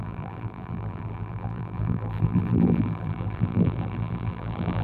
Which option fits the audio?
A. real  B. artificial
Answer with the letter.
B